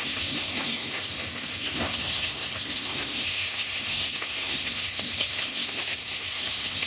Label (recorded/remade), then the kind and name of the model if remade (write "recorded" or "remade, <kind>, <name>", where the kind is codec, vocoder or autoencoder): remade, codec, SNAC